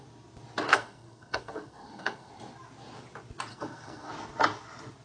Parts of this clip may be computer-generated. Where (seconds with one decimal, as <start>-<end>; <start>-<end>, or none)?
0.7-2.3; 3.5-4.1